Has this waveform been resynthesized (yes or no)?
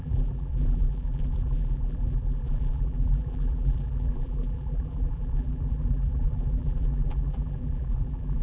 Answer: yes